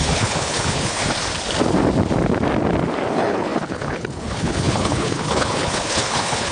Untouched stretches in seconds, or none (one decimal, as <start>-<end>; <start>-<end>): 1.0-3.1

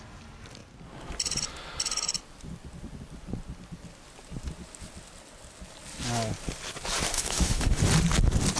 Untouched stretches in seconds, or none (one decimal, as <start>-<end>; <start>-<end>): 0.0-7.1; 7.8-8.6

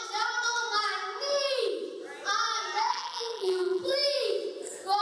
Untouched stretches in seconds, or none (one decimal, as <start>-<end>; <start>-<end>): 0.0-2.9; 3.8-5.0

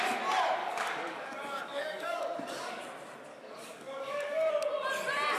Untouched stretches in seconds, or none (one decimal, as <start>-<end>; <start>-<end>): 0.0-0.6; 2.8-3.3; 4.5-5.4

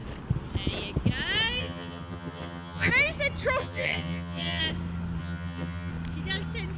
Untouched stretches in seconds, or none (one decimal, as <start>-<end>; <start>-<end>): 0.0-1.6; 2.9-3.6; 4.6-5.2; 5.9-6.8

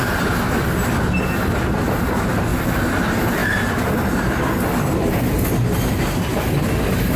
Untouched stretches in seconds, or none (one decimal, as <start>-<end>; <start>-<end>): 0.0-2.5; 3.0-7.2